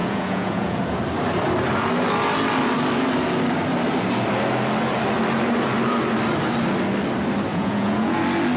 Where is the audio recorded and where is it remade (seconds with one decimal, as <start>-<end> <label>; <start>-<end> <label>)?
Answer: 0.0-1.0 remade; 1.0-7.5 recorded; 7.5-8.2 remade; 8.2-8.6 recorded